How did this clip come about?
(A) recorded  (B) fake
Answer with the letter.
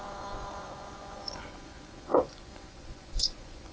B